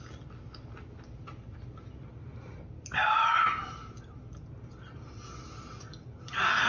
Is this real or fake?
real